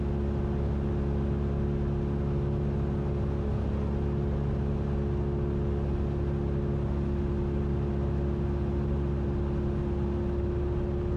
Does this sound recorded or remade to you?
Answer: recorded